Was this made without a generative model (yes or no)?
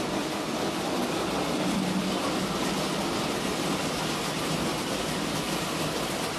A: yes